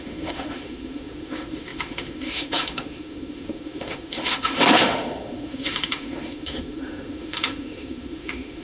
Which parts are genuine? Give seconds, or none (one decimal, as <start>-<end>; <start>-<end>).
none